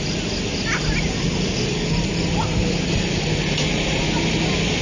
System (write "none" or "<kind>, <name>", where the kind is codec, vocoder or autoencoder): none